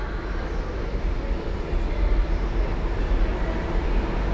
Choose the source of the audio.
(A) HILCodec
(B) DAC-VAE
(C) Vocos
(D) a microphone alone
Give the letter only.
D